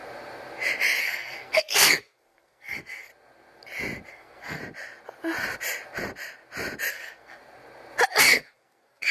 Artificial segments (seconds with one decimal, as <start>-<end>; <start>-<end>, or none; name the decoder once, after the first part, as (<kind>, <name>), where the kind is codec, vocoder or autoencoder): 1.0-3.1 (codec, SNAC); 4.1-4.6; 6.9-7.4; 8.2-9.1